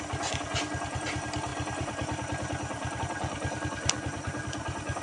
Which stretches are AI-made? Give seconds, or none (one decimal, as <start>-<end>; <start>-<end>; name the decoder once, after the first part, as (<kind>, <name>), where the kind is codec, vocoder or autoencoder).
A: none